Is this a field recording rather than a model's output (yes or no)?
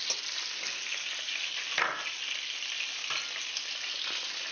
yes